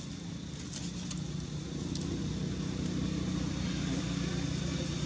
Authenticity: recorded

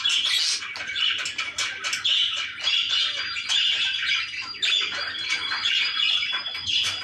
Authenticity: recorded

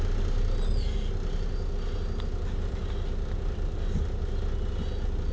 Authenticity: recorded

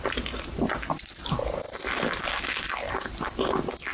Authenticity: recorded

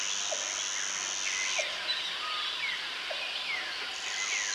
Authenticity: recorded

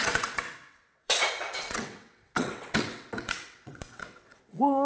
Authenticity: remade